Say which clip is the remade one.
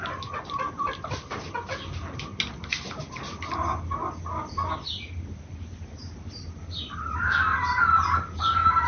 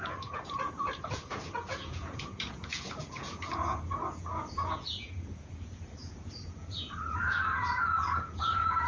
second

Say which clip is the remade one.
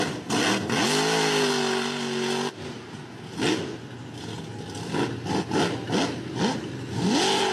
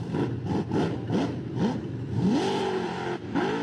second